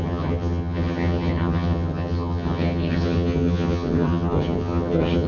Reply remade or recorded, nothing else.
remade